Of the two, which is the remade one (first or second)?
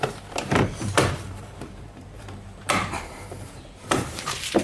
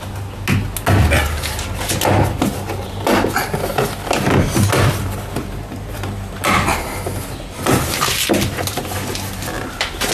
first